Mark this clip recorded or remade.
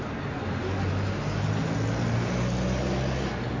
recorded